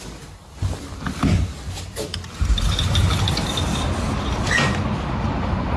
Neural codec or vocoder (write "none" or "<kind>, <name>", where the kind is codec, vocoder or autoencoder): none